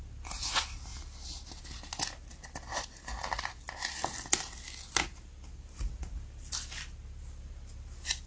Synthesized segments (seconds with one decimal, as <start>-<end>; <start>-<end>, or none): none